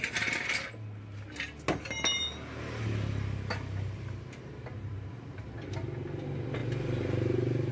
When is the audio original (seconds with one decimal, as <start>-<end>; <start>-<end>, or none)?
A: 0.0-7.7